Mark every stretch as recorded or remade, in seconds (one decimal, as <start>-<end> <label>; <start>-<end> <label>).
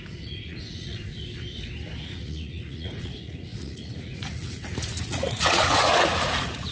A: 0.0-1.1 remade; 1.1-2.1 recorded; 2.1-6.7 remade